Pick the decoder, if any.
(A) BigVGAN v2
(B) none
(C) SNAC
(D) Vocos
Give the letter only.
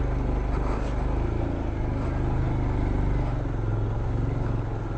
B